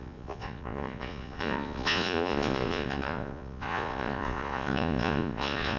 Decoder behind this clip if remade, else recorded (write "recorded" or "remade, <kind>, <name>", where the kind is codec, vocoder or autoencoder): remade, vocoder, Vocos